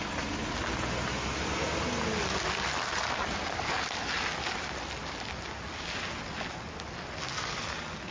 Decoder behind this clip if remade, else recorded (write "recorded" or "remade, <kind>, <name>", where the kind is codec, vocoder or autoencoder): recorded